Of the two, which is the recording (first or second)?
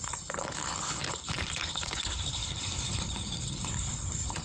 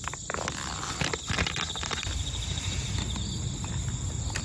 second